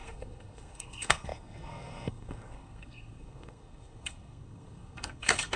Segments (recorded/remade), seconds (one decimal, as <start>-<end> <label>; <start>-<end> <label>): 0.0-5.6 remade